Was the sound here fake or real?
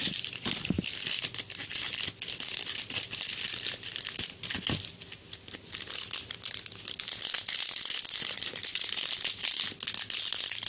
real